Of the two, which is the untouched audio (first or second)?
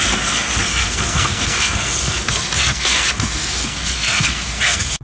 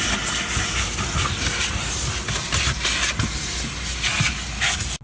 second